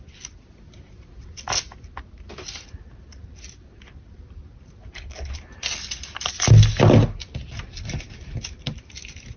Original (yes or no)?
yes